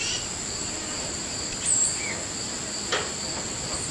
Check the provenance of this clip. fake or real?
real